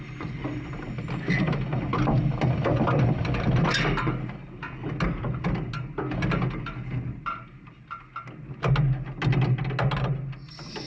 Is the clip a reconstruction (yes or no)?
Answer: no